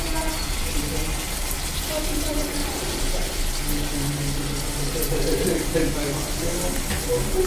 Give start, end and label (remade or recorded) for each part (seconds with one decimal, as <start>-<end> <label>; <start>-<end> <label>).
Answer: 0.0-2.6 recorded; 2.6-3.4 remade; 3.4-7.5 recorded